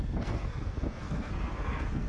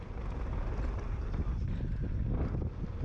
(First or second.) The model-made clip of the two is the first